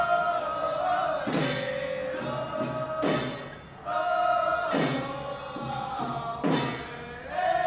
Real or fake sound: real